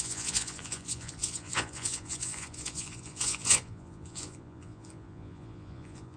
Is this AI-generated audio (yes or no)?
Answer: yes